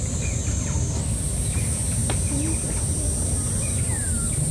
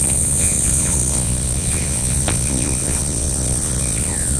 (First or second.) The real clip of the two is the first